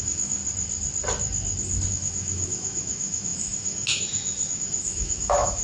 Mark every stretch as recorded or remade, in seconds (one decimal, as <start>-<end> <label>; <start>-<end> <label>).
0.0-0.4 remade; 0.4-1.9 recorded; 1.9-5.6 remade